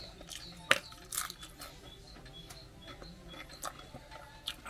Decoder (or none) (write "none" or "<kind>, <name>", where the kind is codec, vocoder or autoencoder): none